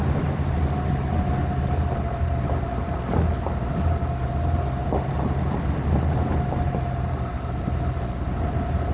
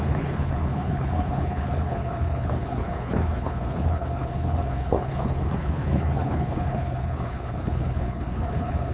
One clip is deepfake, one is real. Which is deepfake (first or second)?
second